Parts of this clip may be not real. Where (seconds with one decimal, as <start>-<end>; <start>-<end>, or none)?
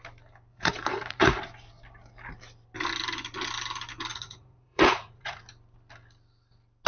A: 0.5-1.4; 4.1-5.4